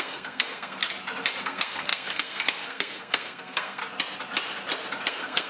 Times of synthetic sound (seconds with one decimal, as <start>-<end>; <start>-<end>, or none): 0.0-0.8; 1.4-3.8; 5.1-5.5

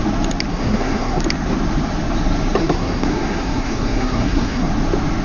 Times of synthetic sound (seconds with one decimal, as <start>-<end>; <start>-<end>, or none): 0.5-1.2; 2.6-4.7

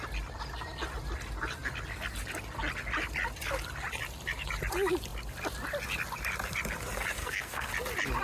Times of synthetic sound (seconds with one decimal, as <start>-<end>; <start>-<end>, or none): 7.2-7.7

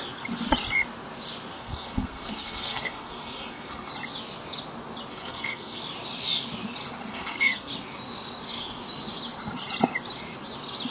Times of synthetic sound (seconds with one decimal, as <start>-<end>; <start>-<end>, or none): 1.5-3.9; 5.1-5.8; 7.1-7.7

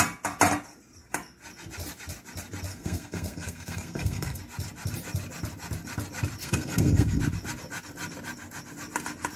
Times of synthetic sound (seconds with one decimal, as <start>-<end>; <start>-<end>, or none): 2.7-4.4; 6.4-7.2

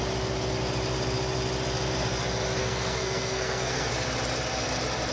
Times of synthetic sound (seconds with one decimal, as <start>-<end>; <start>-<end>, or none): 2.6-3.9